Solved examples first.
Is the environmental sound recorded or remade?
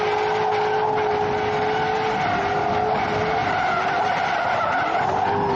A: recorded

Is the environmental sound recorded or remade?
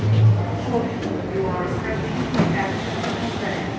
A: recorded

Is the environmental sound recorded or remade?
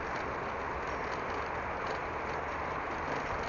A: recorded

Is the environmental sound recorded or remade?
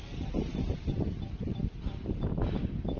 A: recorded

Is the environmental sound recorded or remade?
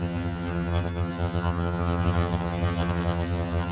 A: remade